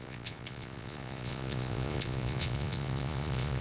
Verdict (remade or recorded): remade